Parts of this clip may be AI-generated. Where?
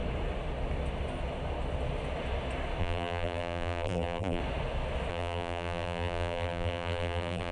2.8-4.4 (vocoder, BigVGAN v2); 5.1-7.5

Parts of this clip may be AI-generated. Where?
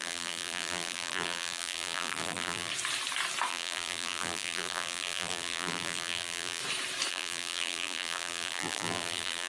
0.0-2.7 (vocoder, BigVGAN v2); 3.5-6.6; 7.1-9.5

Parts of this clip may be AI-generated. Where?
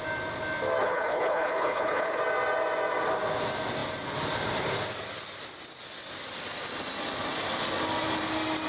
0.8-2.2 (codec, HILCodec)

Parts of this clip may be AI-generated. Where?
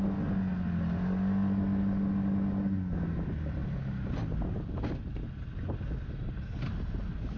none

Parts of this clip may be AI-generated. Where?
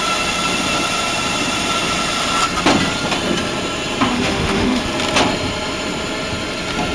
4.1-4.8 (autoencoder, DAC-VAE)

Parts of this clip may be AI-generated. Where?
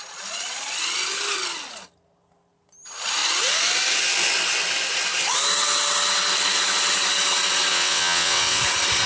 7.7-8.6 (vocoder, WaveNeXt)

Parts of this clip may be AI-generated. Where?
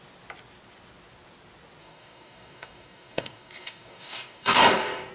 1.8-5.1 (codec, DAC)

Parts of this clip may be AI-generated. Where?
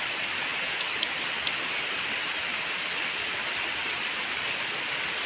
none